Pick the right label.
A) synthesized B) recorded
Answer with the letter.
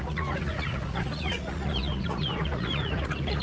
A